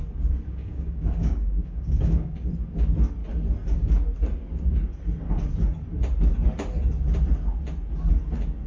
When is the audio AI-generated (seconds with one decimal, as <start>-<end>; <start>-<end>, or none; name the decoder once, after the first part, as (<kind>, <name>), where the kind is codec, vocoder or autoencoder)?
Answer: 0.6-2.5 (codec, DAC)